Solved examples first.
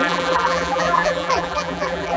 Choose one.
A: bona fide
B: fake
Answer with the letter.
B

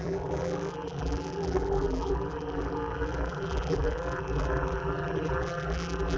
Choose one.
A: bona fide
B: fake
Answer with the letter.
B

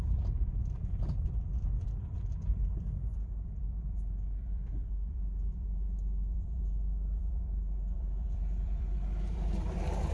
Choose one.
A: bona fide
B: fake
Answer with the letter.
B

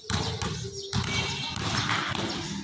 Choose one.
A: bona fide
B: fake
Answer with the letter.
A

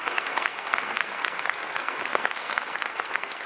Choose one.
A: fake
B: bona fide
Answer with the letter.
A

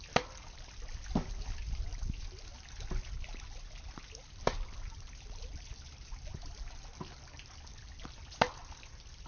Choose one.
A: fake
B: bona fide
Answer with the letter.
B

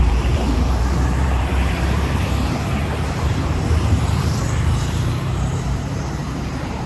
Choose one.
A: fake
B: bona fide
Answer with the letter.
A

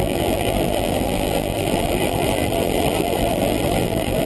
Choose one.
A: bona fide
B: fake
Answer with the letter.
B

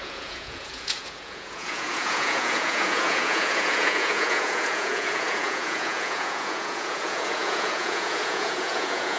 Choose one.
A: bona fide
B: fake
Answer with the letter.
B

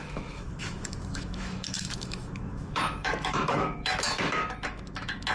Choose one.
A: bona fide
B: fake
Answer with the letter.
B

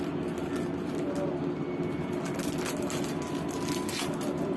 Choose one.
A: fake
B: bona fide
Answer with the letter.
B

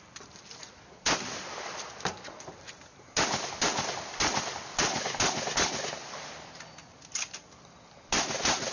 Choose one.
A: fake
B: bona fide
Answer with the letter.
B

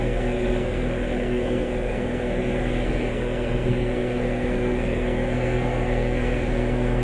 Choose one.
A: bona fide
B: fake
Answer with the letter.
B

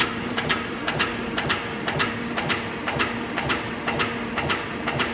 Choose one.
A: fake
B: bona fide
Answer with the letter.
A